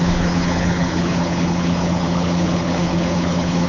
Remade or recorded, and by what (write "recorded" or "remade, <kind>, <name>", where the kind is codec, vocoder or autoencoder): remade, codec, HILCodec